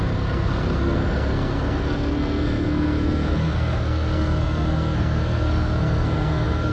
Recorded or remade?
remade